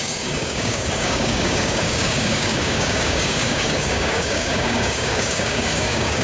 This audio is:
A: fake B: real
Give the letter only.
A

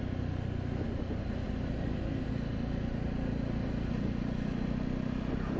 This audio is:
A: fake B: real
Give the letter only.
B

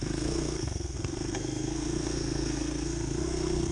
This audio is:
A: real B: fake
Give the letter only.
B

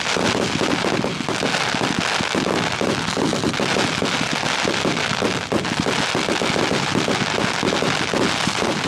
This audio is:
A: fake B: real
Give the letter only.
B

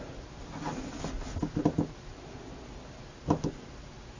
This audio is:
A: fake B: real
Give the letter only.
B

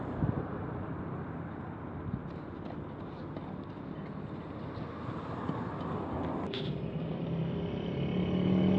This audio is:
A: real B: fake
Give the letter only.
A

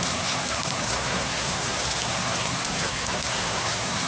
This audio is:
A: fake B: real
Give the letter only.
A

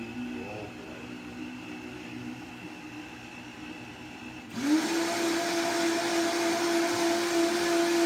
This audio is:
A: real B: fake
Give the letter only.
A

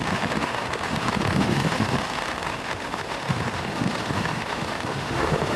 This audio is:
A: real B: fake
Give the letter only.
B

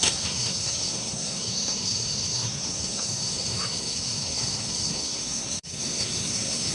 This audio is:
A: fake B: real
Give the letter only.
A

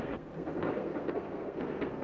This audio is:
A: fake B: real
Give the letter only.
A